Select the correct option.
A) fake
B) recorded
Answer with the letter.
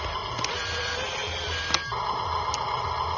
B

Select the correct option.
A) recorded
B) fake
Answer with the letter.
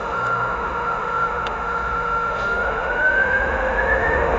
B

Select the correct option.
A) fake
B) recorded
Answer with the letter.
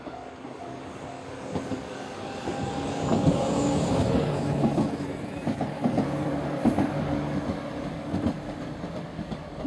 A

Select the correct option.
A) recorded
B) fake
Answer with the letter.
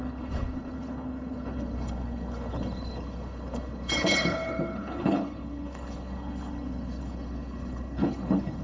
B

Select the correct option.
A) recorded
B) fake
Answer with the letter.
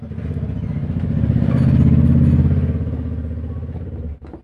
A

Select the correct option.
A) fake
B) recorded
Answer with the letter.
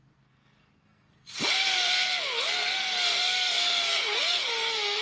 A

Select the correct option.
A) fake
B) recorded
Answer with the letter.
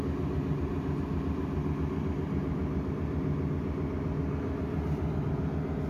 B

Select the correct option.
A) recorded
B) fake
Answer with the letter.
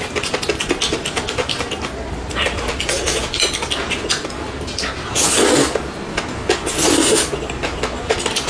A